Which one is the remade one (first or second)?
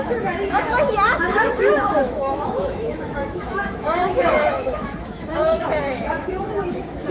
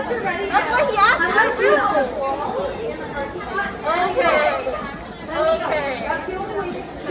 first